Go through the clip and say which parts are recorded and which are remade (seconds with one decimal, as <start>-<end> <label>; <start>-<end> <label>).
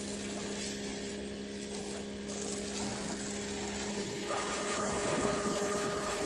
0.0-3.9 recorded; 3.9-6.3 remade